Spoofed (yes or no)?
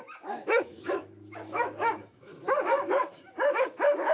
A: yes